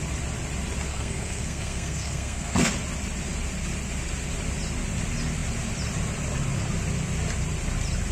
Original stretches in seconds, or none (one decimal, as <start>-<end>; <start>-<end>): 0.0-0.9; 2.7-8.1